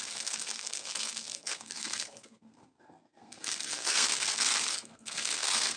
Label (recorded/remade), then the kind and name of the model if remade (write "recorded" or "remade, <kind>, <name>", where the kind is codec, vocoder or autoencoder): remade, codec, SNAC